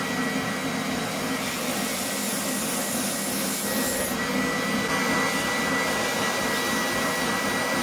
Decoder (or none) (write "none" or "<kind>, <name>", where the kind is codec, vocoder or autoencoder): none